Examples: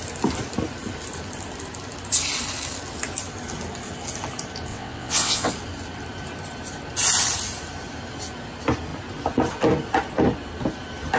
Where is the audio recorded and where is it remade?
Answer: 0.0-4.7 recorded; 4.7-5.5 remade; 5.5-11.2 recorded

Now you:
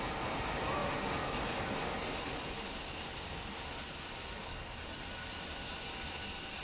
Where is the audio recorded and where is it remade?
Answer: 0.0-6.6 recorded

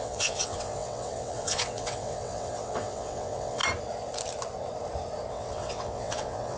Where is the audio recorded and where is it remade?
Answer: 0.0-3.6 remade; 3.6-5.3 recorded; 5.3-6.6 remade

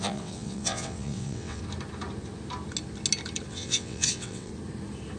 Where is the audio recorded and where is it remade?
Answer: 0.0-1.6 remade; 1.6-3.5 recorded; 3.5-4.5 remade; 4.5-5.2 recorded

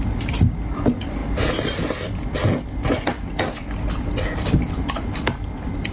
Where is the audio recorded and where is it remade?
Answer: 0.0-5.9 recorded

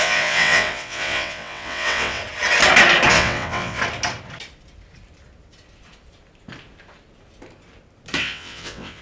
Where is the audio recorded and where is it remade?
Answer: 0.0-2.2 remade; 2.2-3.1 recorded; 3.1-3.8 remade; 3.8-8.2 recorded; 8.2-9.0 remade